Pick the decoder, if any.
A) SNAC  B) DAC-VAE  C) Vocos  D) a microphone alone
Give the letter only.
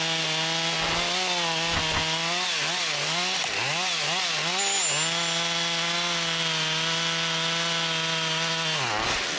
D